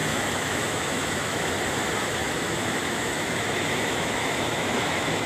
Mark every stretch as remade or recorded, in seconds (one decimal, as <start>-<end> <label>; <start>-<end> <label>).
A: 0.0-1.5 remade; 1.5-2.2 recorded; 2.2-5.3 remade